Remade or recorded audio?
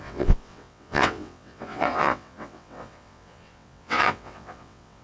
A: remade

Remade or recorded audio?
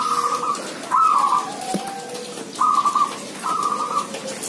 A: recorded